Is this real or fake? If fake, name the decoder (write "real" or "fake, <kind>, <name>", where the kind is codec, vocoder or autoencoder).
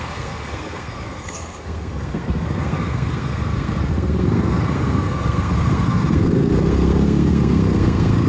fake, codec, SNAC